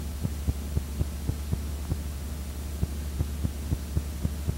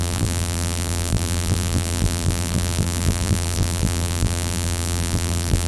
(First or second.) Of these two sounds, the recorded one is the first